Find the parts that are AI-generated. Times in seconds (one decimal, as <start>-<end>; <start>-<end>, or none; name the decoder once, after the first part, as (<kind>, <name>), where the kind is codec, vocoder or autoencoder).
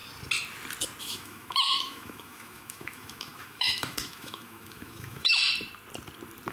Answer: 1.0-5.4 (autoencoder, DAC-VAE)